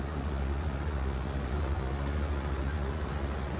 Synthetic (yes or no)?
yes